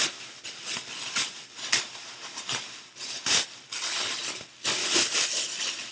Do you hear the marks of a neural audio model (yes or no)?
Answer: no